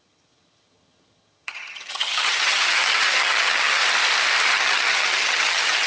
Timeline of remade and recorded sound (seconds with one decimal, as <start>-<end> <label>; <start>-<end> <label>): 0.0-3.8 remade; 3.8-4.5 recorded; 4.5-5.9 remade